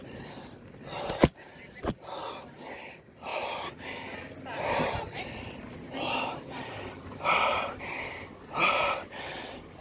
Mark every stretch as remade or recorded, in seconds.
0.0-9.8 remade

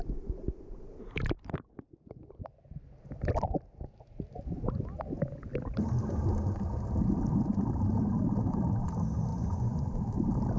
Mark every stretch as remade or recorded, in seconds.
0.0-9.3 recorded; 9.3-9.9 remade; 9.9-10.6 recorded

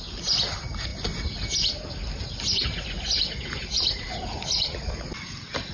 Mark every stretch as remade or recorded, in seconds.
0.0-5.7 recorded

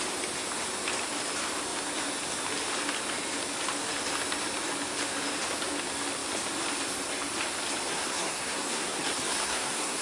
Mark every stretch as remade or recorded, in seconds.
0.0-7.9 recorded; 7.9-10.0 remade

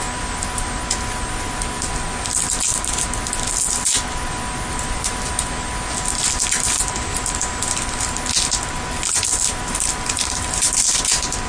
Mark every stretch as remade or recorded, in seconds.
0.0-9.3 recorded; 9.3-11.0 remade; 11.0-11.5 recorded

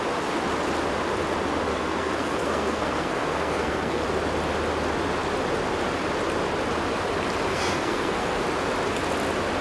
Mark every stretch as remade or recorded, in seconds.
0.0-1.7 recorded; 1.7-4.0 remade; 4.0-7.5 recorded; 7.5-8.4 remade; 8.4-9.6 recorded

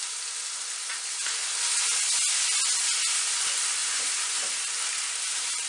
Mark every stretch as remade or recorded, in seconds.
0.0-3.8 recorded; 3.8-4.4 remade; 4.4-5.7 recorded

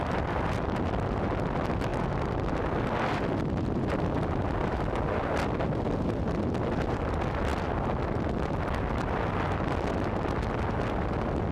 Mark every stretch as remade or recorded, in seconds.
0.0-11.5 recorded